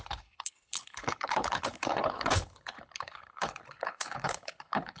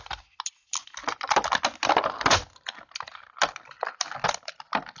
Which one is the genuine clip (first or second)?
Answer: second